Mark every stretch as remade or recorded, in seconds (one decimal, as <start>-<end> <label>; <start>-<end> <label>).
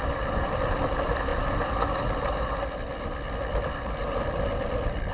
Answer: 0.0-5.1 recorded